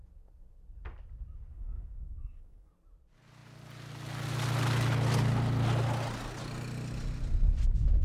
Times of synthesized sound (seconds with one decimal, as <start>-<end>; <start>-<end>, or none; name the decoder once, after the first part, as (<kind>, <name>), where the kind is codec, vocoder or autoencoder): 1.5-2.7 (codec, SNAC)

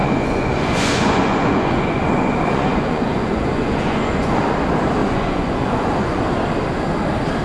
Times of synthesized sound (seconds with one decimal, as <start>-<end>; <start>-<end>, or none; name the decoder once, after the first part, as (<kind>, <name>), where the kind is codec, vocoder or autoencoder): 0.0-4.4 (vocoder, Vocos); 5.0-6.2

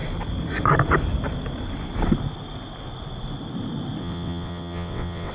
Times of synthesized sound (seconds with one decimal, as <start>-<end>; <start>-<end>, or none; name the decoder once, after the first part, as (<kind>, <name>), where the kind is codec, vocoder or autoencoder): 4.0-5.3 (vocoder, WaveNeXt)

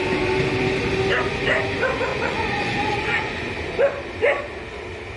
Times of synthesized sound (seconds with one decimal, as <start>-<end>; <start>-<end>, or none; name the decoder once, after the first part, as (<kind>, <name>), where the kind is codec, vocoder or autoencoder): 2.1-3.5 (vocoder, Vocos)